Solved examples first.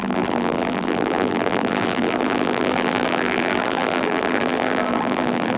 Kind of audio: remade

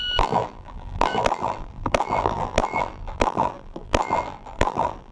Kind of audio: remade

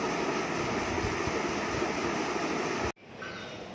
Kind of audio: recorded